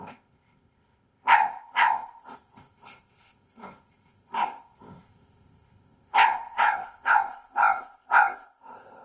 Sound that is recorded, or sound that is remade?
remade